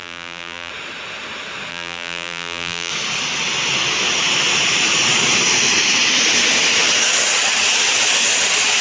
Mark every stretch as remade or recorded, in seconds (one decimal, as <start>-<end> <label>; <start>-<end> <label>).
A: 0.0-0.7 remade; 0.7-1.7 recorded; 1.7-2.9 remade; 2.9-8.8 recorded